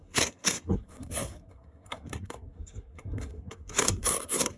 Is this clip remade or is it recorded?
remade